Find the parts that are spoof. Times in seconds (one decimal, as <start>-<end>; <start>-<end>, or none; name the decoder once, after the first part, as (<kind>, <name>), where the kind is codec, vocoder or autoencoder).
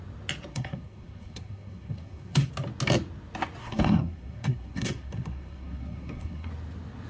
0.5-2.5 (codec, SNAC); 3.6-6.5